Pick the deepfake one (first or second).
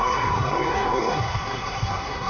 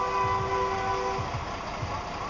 first